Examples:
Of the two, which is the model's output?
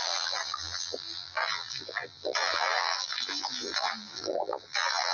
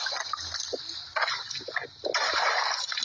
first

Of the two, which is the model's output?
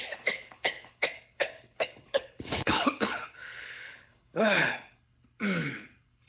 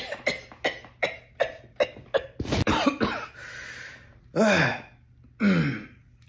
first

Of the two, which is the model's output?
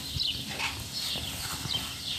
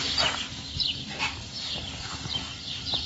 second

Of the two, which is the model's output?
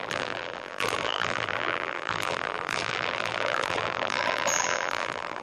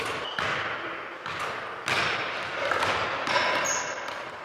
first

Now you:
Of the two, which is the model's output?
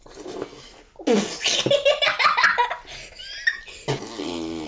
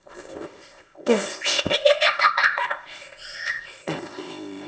second